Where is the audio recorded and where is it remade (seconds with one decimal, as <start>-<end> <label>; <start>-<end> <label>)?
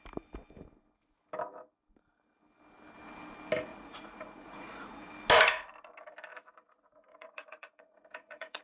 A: 0.0-3.7 recorded; 3.7-5.1 remade; 5.1-6.3 recorded; 6.3-8.6 remade